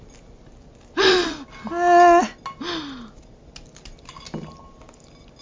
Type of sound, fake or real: real